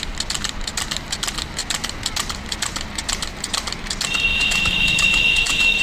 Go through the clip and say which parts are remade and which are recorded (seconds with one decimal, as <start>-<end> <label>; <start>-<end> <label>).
0.0-4.3 recorded; 4.3-5.8 remade